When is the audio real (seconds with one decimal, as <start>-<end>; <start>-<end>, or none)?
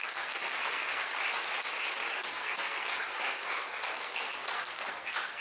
1.1-2.1